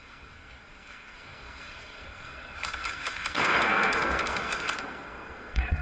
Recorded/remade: remade